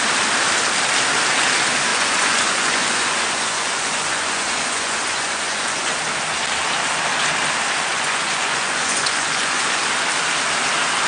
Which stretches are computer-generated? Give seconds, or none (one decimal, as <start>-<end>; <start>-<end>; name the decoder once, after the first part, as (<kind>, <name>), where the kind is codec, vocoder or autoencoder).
1.9-6.0 (vocoder, Vocos); 7.9-9.8